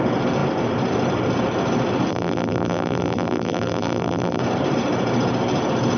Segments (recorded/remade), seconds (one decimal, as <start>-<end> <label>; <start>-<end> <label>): 0.0-2.1 recorded; 2.1-4.4 remade; 4.4-6.0 recorded